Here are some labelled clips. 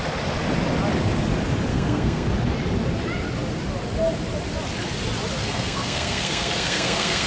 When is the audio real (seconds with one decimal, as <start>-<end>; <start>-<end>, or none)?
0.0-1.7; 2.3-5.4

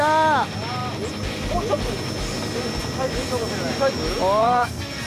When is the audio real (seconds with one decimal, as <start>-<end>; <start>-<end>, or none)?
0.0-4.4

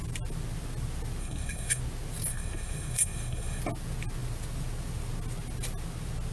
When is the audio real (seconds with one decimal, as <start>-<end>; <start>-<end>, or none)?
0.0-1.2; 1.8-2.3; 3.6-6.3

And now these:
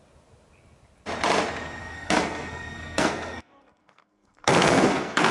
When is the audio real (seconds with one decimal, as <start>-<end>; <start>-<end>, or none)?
0.0-1.8

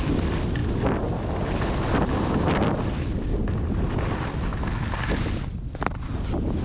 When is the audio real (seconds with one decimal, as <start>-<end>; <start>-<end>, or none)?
0.0-6.6

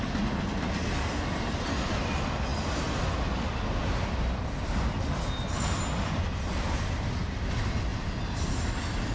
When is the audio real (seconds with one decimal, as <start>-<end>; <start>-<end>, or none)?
0.0-9.1

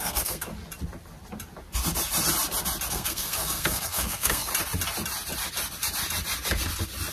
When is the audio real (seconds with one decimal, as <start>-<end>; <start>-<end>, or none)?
0.5-2.9; 4.5-7.1